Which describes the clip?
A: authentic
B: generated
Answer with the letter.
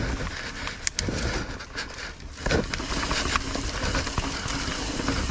A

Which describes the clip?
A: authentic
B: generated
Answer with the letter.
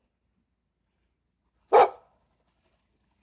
A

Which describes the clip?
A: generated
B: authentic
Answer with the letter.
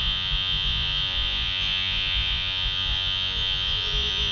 A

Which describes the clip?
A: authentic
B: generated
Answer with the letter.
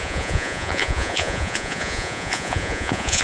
B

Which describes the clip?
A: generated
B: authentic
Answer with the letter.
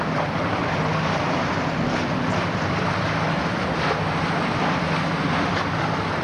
B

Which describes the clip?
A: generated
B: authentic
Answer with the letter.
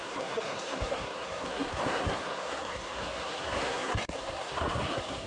A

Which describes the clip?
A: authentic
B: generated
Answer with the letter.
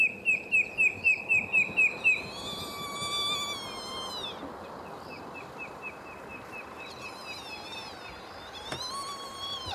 A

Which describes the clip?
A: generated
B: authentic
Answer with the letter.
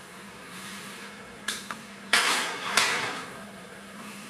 A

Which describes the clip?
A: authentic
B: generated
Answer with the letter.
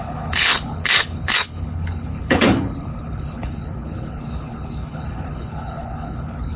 B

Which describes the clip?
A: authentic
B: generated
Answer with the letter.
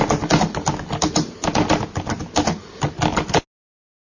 A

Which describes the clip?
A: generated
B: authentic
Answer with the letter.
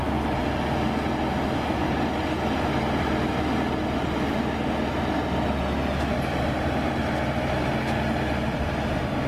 B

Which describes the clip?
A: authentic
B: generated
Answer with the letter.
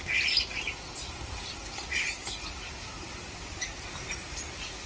A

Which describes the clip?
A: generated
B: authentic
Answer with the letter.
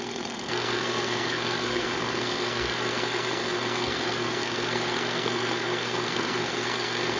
A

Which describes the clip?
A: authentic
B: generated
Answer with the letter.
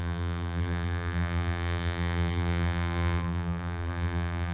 B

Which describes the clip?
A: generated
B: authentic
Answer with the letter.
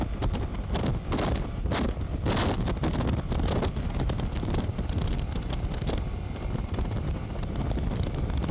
A